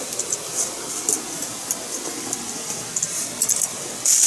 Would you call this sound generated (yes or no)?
no